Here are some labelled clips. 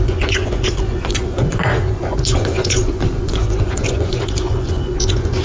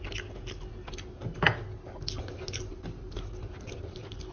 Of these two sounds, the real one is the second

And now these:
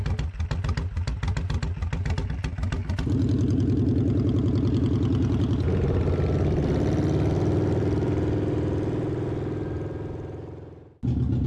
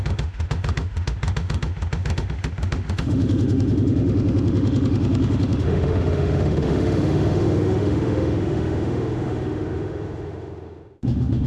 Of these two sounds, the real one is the first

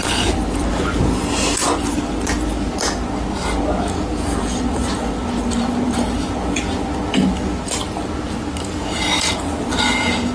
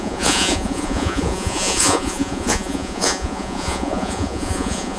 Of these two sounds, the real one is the first